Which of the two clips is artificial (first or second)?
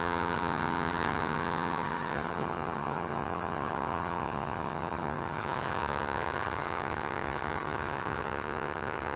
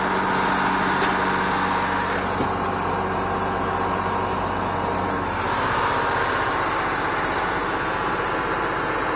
first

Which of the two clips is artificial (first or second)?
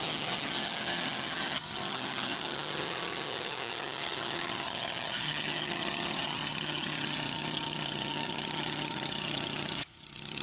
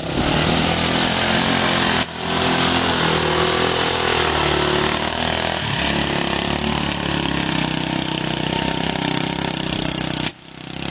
first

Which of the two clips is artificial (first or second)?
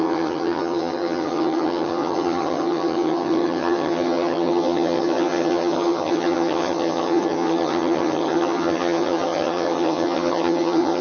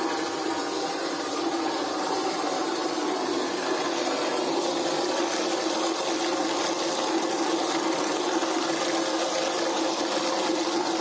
first